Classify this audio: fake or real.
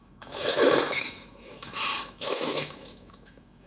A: fake